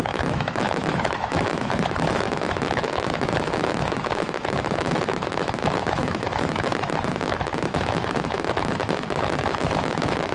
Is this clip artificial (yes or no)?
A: yes